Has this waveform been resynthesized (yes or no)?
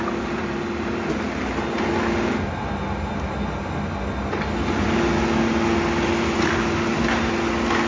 no